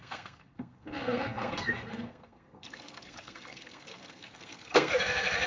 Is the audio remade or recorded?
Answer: remade